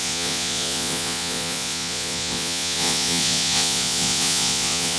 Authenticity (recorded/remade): remade